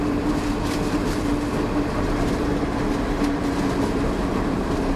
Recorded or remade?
recorded